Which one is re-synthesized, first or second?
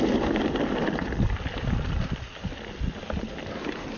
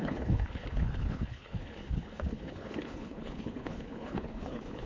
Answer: second